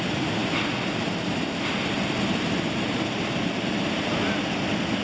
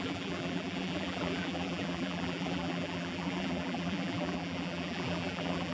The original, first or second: first